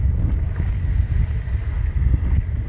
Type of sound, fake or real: real